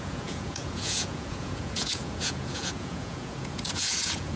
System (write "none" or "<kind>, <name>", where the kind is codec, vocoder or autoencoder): vocoder, Vocos